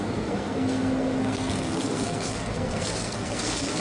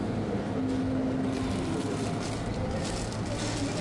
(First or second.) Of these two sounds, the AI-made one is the first